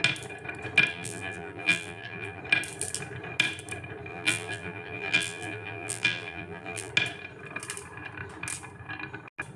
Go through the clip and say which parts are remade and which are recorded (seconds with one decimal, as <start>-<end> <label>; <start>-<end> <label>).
0.0-0.9 recorded; 0.9-2.4 remade; 2.4-4.1 recorded; 4.1-6.9 remade; 6.9-9.6 recorded